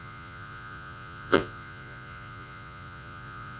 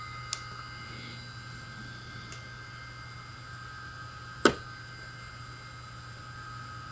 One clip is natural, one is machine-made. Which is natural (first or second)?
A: second